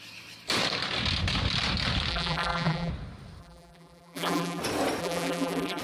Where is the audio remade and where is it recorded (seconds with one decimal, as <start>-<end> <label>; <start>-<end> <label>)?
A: 0.0-2.1 recorded; 2.1-2.9 remade; 2.9-3.4 recorded; 3.4-4.6 remade; 4.6-5.0 recorded; 5.0-5.8 remade